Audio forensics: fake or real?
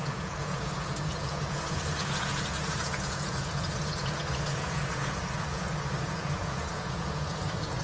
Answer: fake